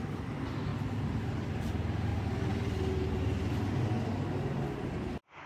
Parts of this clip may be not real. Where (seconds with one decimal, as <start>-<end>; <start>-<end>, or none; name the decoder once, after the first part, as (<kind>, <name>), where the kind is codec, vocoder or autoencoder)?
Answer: none